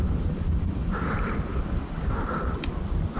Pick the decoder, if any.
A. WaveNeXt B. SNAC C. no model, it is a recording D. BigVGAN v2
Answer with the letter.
D